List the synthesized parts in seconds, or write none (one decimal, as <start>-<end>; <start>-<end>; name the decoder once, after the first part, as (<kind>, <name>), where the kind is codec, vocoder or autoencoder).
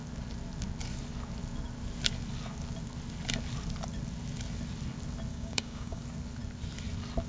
5.3-6.0 (codec, DAC)